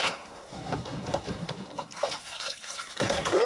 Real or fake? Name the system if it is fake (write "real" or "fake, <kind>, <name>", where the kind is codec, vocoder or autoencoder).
fake, codec, SNAC